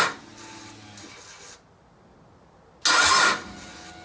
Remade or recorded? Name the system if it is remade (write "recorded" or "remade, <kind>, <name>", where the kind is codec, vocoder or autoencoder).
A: recorded